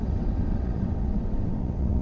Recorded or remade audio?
remade